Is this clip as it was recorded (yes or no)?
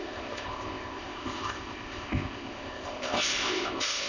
no